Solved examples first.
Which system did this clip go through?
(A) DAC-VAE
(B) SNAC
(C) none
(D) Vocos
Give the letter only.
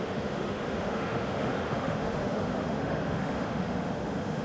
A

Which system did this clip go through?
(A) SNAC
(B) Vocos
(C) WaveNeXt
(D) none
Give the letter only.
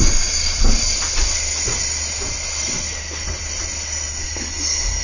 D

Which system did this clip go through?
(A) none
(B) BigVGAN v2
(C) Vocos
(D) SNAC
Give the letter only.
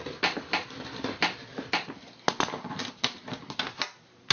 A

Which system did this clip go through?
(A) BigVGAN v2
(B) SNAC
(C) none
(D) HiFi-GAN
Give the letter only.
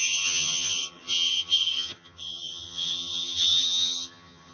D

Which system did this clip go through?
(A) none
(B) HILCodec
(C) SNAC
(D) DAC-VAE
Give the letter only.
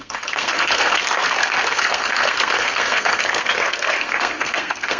C